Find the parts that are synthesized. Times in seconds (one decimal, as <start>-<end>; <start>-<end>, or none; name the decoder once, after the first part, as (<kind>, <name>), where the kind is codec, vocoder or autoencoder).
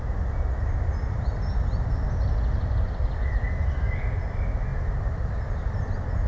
none